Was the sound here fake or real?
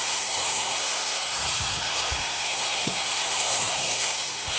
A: fake